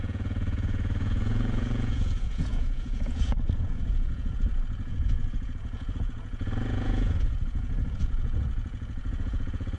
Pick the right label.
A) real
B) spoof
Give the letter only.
B